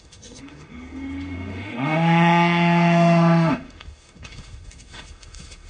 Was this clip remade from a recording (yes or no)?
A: yes